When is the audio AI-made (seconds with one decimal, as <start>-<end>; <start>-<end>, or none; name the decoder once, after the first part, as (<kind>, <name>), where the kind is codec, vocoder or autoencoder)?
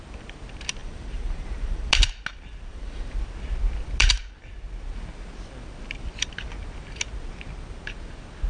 0.8-1.9 (vocoder, BigVGAN v2); 2.7-3.2